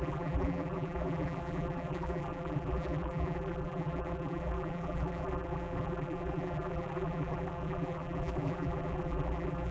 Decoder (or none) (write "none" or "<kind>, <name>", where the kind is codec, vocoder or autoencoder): vocoder, BigVGAN v2